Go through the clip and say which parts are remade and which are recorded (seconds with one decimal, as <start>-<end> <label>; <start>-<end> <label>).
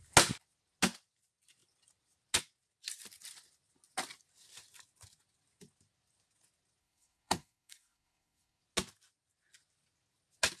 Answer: 0.0-6.8 recorded; 6.8-8.6 remade; 8.6-10.6 recorded